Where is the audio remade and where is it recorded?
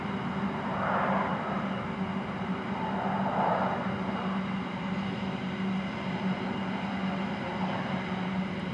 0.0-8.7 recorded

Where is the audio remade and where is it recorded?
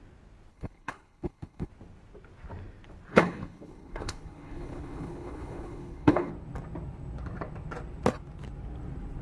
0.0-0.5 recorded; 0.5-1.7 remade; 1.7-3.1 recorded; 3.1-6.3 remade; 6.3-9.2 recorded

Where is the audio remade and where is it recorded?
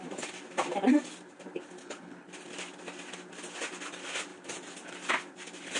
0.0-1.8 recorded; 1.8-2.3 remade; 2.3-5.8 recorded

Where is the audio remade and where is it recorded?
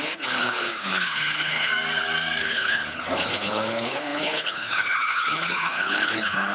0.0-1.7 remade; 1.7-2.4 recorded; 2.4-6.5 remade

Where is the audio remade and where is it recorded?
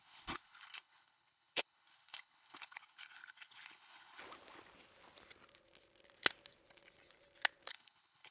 0.0-4.2 remade; 4.2-7.7 recorded; 7.7-8.3 remade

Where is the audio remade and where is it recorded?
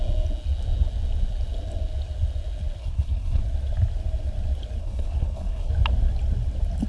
0.0-2.8 recorded; 2.8-3.4 remade; 3.4-4.8 recorded; 4.8-5.7 remade; 5.7-6.9 recorded